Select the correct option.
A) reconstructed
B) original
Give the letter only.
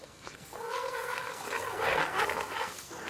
A